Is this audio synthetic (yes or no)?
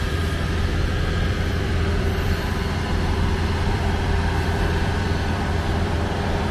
yes